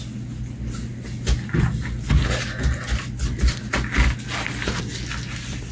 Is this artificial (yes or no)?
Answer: no